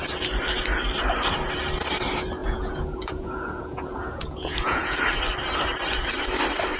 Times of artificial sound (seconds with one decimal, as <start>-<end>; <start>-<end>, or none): 2.4-5.0